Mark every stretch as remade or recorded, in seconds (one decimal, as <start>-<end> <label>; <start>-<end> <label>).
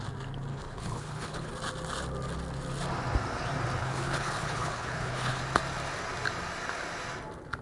0.0-0.5 recorded; 0.5-1.5 remade; 1.5-3.8 recorded; 3.8-5.4 remade; 5.4-7.6 recorded